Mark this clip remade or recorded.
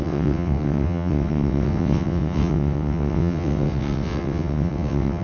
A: remade